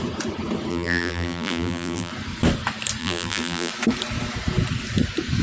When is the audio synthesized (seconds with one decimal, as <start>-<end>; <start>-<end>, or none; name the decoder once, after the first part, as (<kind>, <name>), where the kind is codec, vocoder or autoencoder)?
0.7-2.1 (vocoder, BigVGAN v2); 3.0-3.7